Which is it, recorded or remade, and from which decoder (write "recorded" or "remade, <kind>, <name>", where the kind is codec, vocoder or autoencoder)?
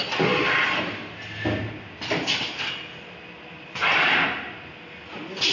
recorded